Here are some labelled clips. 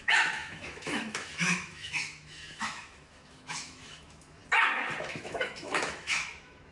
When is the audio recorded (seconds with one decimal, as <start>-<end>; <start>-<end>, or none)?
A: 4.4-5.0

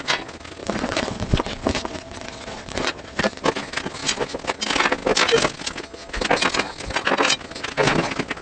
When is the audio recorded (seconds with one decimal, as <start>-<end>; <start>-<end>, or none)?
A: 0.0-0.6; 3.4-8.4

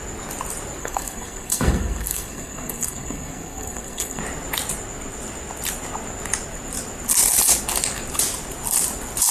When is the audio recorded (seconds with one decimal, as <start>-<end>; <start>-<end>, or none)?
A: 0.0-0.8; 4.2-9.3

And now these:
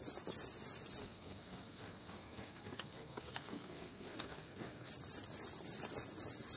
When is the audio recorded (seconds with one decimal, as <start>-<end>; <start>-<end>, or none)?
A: 0.0-1.0; 4.9-6.6

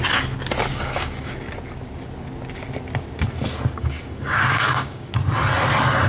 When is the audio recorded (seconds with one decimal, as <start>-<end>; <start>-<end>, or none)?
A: 0.0-0.7; 1.3-3.8; 5.1-6.1